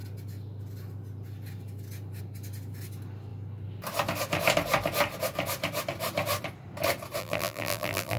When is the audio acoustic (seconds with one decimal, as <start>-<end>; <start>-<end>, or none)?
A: 0.0-7.2